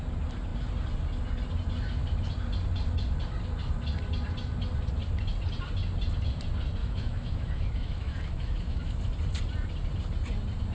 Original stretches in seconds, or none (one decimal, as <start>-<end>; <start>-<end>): 0.0-6.8; 9.0-10.7